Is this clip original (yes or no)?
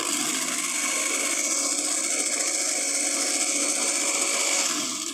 yes